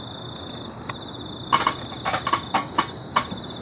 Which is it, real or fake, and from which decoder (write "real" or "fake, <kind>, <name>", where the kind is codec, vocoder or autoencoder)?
real